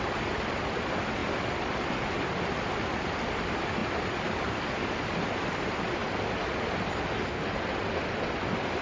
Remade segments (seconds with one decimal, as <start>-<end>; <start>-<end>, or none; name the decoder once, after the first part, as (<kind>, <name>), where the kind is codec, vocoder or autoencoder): none